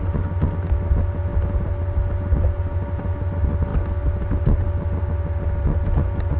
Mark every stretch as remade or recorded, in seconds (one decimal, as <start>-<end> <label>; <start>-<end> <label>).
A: 0.0-6.4 recorded